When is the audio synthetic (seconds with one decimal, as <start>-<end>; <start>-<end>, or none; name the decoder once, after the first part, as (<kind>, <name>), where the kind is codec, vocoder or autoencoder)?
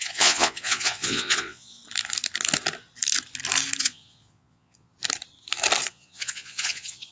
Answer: 0.0-1.8 (vocoder, Vocos); 3.8-4.9; 5.9-7.1